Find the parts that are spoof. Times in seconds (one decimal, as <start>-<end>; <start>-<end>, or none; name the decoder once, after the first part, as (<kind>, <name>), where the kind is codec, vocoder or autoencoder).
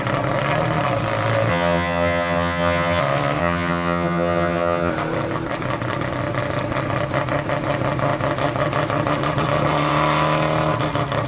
1.5-3.0 (vocoder, HiFi-GAN); 3.4-4.9